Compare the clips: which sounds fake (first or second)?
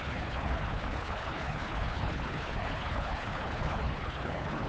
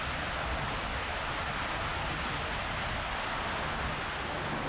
first